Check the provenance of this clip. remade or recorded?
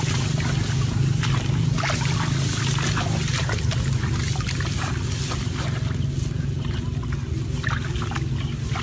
recorded